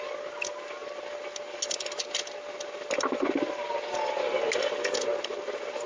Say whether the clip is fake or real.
real